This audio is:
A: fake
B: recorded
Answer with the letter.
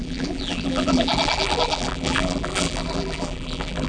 A